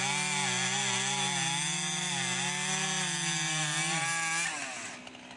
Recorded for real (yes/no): yes